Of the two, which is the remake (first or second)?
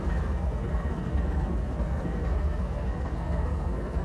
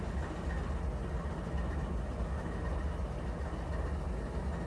first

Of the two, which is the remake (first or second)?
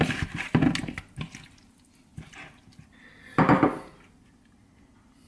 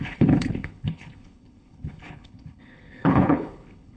second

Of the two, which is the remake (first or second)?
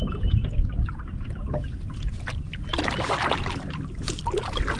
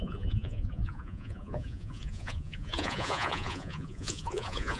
second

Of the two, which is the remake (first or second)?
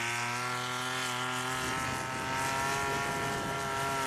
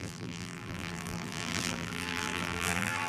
second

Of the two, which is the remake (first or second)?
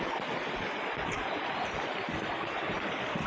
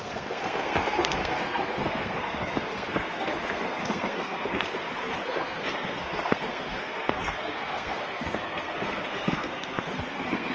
second